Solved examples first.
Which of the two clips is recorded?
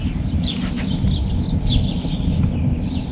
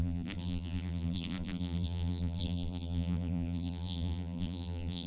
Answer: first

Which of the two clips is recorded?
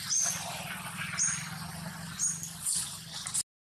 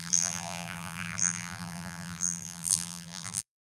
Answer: first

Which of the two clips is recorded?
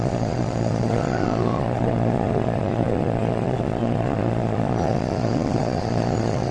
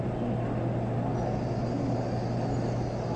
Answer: second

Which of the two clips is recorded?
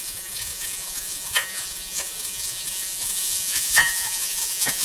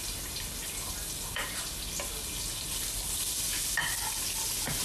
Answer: second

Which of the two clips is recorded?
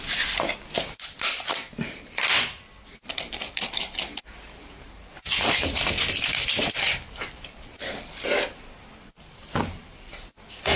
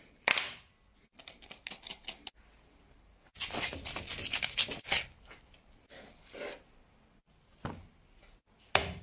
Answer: second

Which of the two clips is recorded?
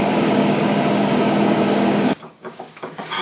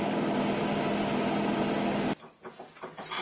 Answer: second